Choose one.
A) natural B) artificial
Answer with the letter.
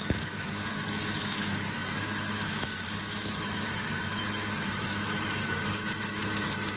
B